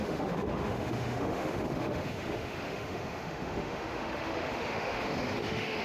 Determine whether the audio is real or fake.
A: fake